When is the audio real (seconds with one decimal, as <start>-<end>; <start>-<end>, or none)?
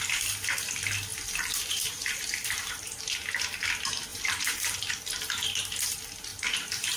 0.0-1.1; 3.0-4.1; 4.9-6.3